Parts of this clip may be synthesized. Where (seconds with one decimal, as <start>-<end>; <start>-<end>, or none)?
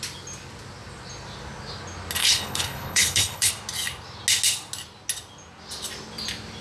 2.2-3.5